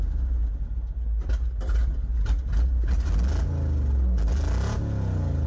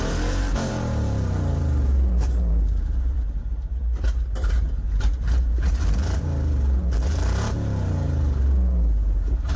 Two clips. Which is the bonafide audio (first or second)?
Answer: first